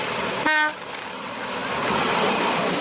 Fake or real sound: real